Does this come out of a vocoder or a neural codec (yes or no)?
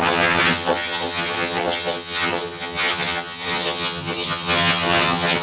yes